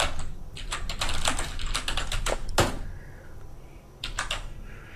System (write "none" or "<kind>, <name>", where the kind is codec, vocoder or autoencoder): none